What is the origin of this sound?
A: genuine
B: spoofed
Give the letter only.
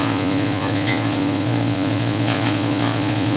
B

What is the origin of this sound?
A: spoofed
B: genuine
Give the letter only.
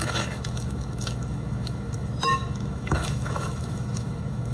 A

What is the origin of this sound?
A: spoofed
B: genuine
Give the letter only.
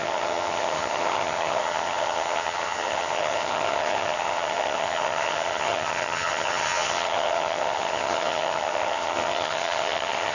A